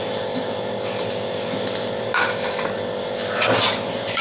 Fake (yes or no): no